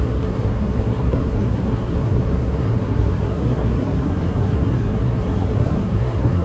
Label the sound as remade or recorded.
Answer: remade